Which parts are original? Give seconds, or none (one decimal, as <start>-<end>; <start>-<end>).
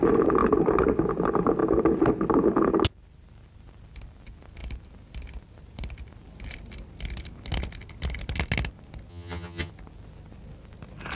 0.0-9.1; 9.7-11.1